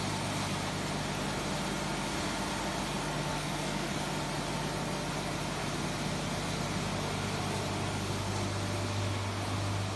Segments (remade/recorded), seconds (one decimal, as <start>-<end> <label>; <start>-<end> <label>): 0.0-3.3 recorded; 3.3-3.9 remade; 3.9-10.0 recorded